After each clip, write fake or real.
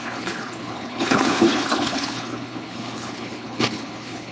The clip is fake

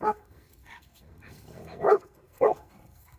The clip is fake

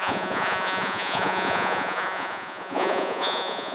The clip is fake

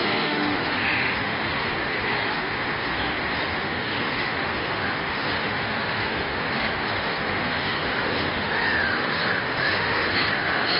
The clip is fake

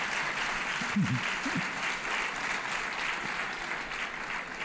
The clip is real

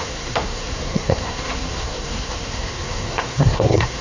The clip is fake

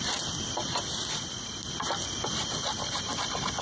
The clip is real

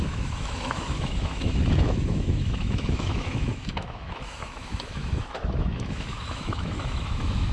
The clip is fake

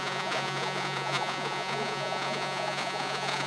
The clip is fake